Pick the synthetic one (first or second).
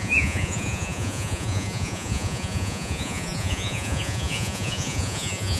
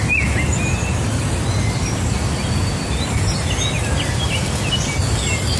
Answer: first